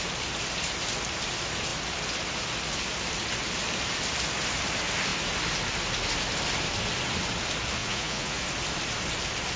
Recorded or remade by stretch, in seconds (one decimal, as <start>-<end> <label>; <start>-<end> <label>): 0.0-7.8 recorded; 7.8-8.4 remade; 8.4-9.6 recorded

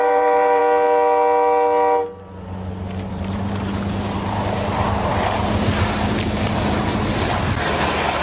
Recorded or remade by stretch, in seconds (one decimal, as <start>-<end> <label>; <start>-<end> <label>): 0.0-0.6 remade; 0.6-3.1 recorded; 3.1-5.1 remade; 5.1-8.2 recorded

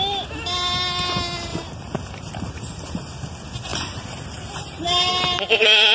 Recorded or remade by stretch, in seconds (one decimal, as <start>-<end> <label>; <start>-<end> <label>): 0.0-1.5 recorded; 1.5-2.3 remade; 2.3-3.7 recorded; 3.7-5.1 remade; 5.1-5.9 recorded

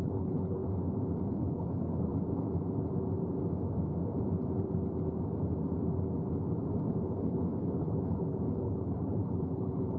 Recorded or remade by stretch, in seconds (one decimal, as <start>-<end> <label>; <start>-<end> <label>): 0.0-0.6 remade; 0.6-1.3 recorded; 1.3-2.1 remade; 2.1-7.2 recorded; 7.2-10.0 remade

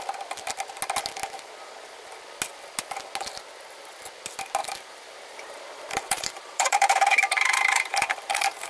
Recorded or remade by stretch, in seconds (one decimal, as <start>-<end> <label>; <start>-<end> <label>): 0.0-4.6 recorded; 4.6-8.7 remade